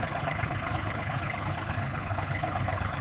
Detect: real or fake fake